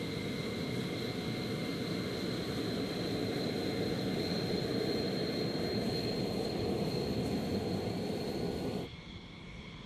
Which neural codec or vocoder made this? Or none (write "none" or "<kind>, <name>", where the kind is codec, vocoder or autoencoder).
none